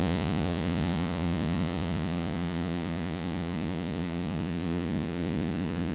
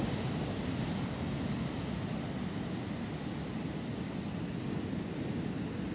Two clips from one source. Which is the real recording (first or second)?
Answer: second